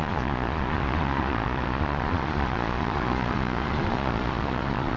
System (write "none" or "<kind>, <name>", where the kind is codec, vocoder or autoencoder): vocoder, Vocos